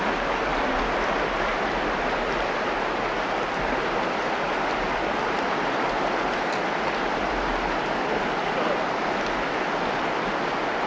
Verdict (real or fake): real